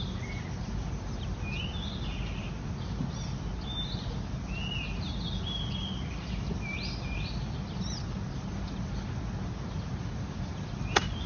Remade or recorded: recorded